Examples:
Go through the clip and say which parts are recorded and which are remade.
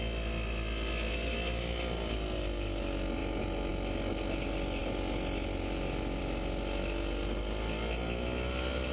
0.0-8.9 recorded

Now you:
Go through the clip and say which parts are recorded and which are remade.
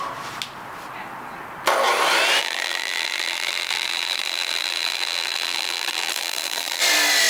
0.0-2.4 recorded; 2.4-6.8 remade; 6.8-7.3 recorded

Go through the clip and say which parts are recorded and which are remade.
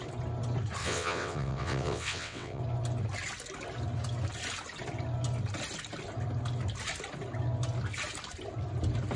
0.0-0.8 recorded; 0.8-2.6 remade; 2.6-9.2 recorded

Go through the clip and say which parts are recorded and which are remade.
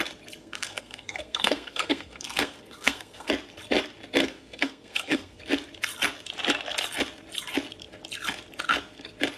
0.0-0.4 recorded; 0.4-3.3 remade; 3.3-4.2 recorded; 4.2-5.4 remade; 5.4-9.4 recorded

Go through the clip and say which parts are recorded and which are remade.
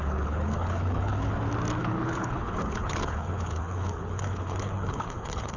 0.0-1.3 remade; 1.3-1.8 recorded; 1.8-5.6 remade